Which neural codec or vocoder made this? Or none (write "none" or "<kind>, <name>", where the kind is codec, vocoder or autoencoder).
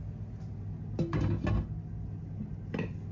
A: none